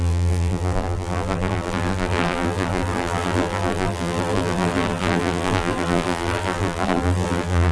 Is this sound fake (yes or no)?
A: yes